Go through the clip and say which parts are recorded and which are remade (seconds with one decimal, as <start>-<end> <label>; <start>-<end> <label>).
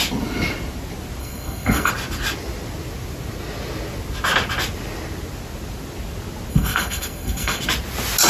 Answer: 0.0-1.2 recorded; 1.2-1.9 remade; 1.9-6.5 recorded; 6.5-7.6 remade; 7.6-8.3 recorded